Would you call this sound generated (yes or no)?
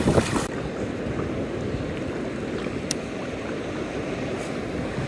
no